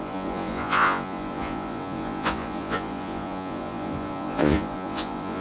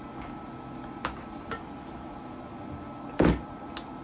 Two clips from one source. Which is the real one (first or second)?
second